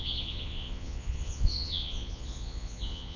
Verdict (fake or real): fake